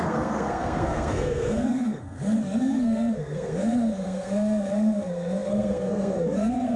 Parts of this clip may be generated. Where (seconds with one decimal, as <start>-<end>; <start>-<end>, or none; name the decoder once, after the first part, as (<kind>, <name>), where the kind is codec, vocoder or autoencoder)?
0.0-6.8 (codec, SNAC)